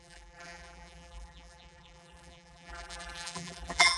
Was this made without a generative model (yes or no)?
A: no